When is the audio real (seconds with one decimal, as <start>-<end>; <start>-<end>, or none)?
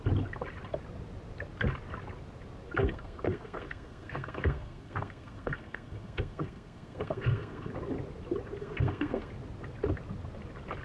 0.0-2.8; 7.7-8.6; 9.3-10.8